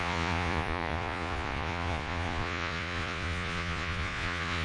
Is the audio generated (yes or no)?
yes